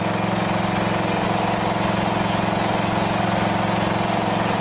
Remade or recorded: recorded